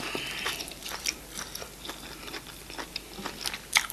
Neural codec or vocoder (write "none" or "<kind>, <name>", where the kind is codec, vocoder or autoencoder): none